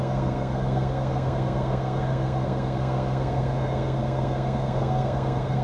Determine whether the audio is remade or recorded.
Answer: remade